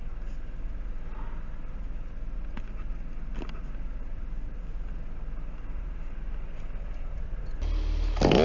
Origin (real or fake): real